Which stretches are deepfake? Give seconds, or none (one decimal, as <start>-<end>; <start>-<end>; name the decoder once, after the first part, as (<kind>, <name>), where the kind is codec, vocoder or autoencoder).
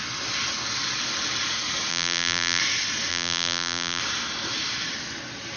1.9-2.6 (vocoder, BigVGAN v2); 3.1-4.0